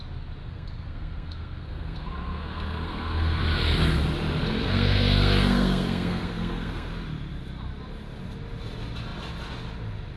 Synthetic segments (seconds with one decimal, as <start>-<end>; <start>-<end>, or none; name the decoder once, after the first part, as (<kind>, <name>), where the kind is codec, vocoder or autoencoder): 0.4-3.4 (codec, SNAC); 4.6-6.9